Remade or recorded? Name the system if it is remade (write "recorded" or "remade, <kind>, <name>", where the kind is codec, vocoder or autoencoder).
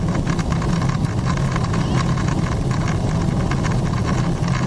recorded